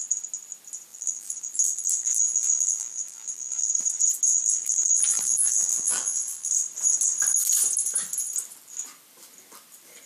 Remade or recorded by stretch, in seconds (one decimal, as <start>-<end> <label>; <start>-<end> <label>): 0.0-0.9 recorded; 0.9-3.7 remade; 3.7-4.3 recorded; 4.3-6.5 remade; 6.5-10.1 recorded